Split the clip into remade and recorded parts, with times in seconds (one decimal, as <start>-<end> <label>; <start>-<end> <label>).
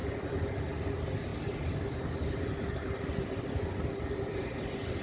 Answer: 0.0-5.0 recorded